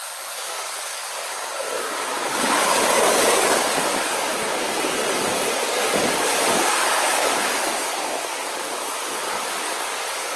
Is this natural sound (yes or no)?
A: no